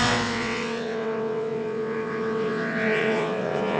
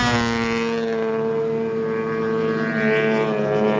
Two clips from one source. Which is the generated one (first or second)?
first